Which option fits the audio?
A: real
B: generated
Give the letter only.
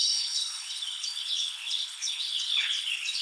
B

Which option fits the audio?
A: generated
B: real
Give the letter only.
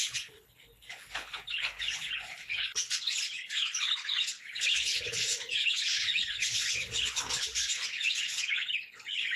A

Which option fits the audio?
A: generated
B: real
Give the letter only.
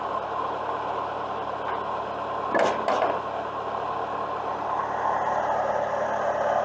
B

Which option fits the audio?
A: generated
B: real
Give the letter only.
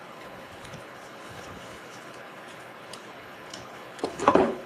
A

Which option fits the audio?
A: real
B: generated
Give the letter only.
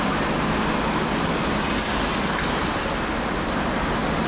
A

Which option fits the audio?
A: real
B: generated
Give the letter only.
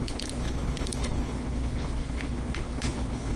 B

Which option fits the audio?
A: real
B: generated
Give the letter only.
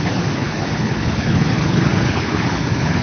B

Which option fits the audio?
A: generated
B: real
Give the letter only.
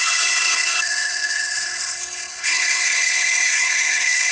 A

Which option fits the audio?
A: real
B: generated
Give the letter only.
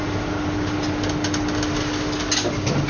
A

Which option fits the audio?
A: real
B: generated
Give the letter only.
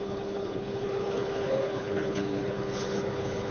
B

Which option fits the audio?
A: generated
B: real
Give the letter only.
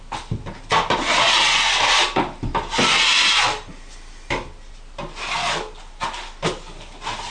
B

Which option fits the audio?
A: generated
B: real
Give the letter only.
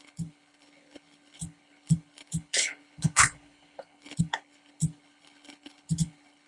A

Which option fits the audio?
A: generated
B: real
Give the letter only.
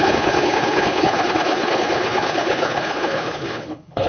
A